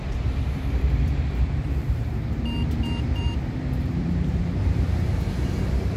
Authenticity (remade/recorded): remade